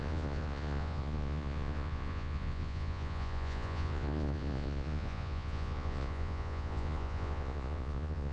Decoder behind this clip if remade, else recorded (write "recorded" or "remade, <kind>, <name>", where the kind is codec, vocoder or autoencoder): remade, vocoder, Vocos